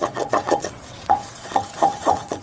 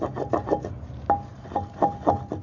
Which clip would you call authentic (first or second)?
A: second